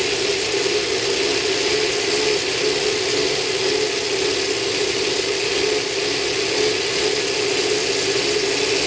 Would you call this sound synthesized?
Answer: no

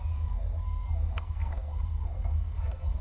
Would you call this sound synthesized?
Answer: yes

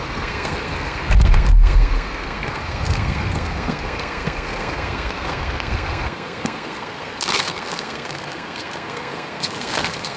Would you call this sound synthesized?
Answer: yes